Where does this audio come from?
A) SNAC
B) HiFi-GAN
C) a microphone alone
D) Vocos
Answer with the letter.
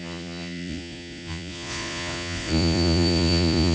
D